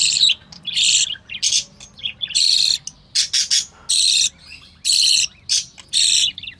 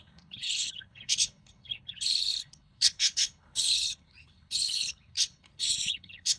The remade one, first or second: second